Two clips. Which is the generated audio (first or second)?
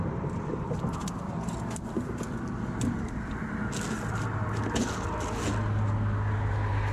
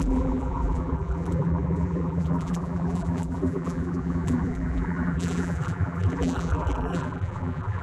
second